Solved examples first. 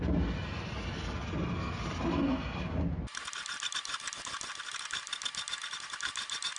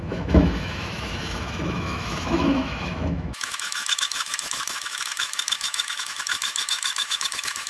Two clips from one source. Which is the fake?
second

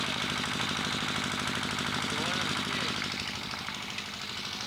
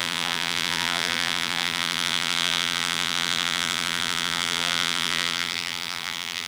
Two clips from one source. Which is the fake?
second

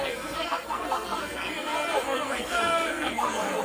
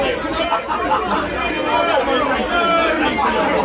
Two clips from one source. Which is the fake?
first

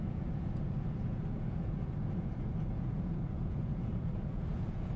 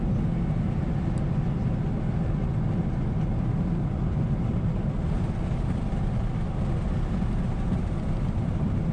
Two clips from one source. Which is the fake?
first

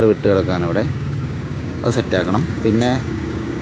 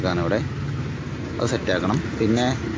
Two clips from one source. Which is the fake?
first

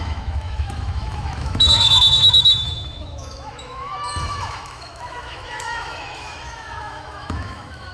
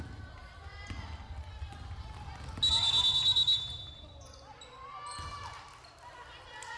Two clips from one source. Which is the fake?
first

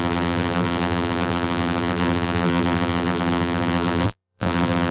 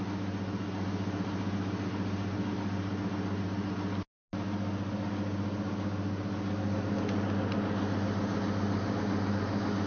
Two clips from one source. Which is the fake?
first